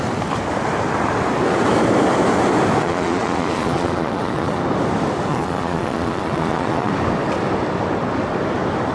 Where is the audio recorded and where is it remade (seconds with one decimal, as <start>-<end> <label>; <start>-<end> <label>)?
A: 0.0-2.8 recorded; 2.8-4.6 remade; 4.6-5.3 recorded; 5.3-6.9 remade; 6.9-8.9 recorded